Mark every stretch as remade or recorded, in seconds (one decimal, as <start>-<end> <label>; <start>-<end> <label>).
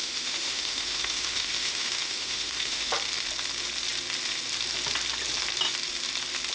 0.0-2.9 remade; 2.9-6.5 recorded